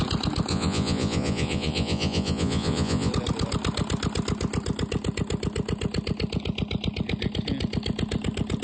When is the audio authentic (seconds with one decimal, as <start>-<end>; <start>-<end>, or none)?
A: 0.0-0.5; 3.1-8.6